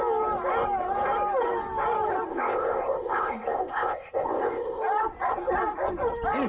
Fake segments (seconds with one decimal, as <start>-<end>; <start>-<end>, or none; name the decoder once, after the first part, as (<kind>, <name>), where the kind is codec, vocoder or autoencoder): 2.3-4.8 (codec, ZipCodec)